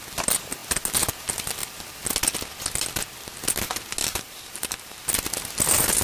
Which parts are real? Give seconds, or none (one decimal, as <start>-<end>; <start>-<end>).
0.0-4.0; 5.0-6.0